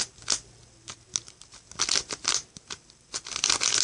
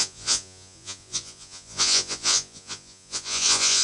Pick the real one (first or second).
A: first